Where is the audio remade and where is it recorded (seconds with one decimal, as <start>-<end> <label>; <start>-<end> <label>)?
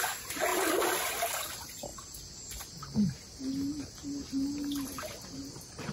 0.0-0.5 recorded; 0.5-1.1 remade; 1.1-5.9 recorded